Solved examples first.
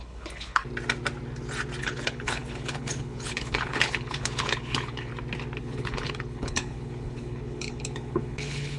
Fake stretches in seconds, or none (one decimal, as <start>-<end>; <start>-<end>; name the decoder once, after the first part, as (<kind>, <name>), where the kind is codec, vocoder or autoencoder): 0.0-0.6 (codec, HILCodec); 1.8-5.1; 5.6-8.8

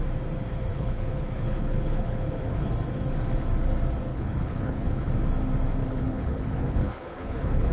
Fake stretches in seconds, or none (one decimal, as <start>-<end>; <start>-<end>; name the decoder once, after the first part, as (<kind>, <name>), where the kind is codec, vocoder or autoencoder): 0.7-2.7 (codec, HILCodec); 4.1-5.1; 5.8-7.7

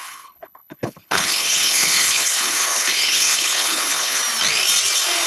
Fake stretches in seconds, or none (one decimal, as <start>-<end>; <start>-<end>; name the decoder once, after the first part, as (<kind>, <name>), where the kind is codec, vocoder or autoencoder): 0.0-4.2 (codec, HILCodec)

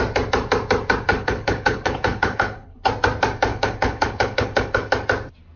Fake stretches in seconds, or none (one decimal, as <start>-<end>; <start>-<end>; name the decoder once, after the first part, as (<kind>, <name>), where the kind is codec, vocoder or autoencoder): 1.1-2.9 (codec, HILCodec); 3.5-4.9

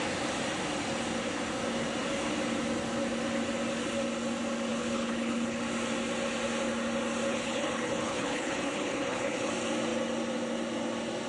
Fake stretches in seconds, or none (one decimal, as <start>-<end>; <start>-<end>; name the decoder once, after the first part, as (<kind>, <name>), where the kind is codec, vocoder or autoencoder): 4.7-5.6 (codec, HILCodec); 7.3-9.5

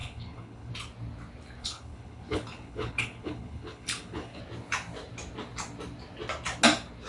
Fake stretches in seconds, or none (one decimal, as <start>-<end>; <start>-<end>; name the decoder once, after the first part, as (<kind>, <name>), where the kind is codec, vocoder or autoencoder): 0.0-0.7 (codec, HILCodec); 1.6-4.4

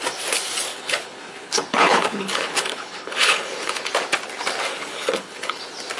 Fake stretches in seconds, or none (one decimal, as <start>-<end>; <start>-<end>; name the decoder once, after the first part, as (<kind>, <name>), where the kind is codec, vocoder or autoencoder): 0.7-3.9 (codec, HILCodec); 4.7-5.6